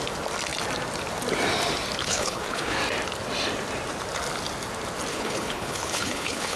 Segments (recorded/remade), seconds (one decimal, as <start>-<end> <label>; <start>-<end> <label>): 0.0-2.0 recorded; 2.0-2.8 remade; 2.8-5.1 recorded; 5.1-6.6 remade